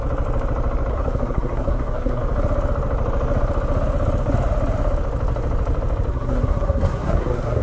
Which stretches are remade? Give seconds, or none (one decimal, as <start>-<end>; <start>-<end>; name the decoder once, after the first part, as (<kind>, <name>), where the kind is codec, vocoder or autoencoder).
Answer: 0.9-2.2 (codec, SNAC); 6.1-7.6